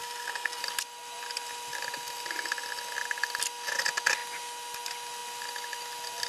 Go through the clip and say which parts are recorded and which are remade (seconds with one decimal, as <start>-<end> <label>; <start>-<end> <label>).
0.0-0.6 remade; 0.6-6.3 recorded